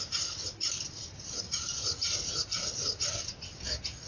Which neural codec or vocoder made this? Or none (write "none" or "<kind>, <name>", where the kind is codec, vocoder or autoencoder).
none